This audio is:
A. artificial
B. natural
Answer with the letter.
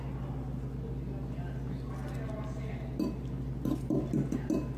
B